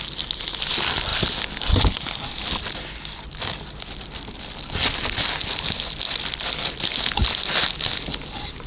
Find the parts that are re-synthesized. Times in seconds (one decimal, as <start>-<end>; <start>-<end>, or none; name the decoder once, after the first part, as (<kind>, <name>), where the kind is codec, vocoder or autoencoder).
none

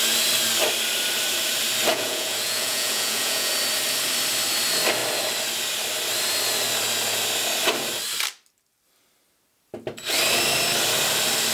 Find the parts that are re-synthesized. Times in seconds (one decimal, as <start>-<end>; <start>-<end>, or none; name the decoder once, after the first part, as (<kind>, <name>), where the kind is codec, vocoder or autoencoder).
1.9-3.5 (vocoder, Vocos)

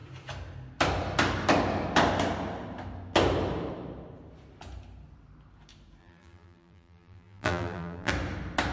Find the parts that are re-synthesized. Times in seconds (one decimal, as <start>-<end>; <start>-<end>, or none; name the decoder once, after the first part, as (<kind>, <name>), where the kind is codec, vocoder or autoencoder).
6.0-8.1 (vocoder, BigVGAN v2)

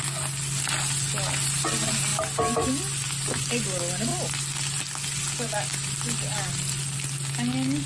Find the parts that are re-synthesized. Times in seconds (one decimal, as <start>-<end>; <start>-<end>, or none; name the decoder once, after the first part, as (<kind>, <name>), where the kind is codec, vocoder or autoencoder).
none

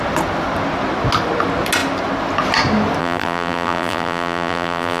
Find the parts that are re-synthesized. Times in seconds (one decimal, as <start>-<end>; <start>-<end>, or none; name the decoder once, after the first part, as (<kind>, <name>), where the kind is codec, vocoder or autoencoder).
3.0-5.0 (vocoder, BigVGAN v2)

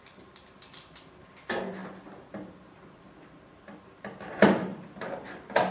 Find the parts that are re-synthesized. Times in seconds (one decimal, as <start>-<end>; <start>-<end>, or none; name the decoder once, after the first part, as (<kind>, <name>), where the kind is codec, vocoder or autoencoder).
0.0-1.8 (vocoder, BigVGAN v2); 3.8-5.7

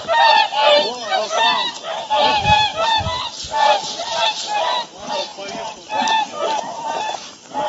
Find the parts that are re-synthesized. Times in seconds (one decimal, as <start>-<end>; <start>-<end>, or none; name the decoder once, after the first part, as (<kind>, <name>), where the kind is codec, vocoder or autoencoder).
0.0-2.7 (vocoder, BigVGAN v2); 4.0-7.7

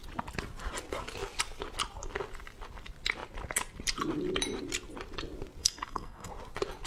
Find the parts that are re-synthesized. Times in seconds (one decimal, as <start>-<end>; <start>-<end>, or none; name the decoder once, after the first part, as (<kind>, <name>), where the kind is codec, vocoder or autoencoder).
5.6-6.3 (codec, SNAC)